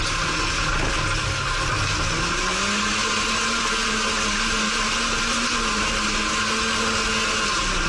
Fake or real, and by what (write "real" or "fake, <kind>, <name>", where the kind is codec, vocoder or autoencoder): real